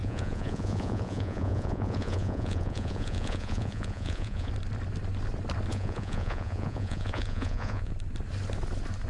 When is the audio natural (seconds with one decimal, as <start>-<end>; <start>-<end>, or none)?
4.5-5.7; 7.9-9.1